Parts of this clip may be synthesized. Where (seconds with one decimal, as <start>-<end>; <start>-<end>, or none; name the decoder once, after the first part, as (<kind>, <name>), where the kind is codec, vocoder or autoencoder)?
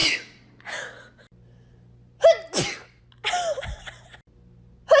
none